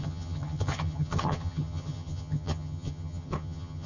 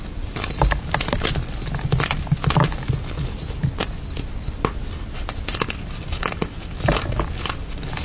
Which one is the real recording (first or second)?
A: second